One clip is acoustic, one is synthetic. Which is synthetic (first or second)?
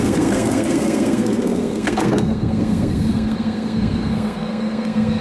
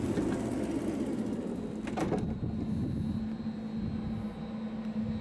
first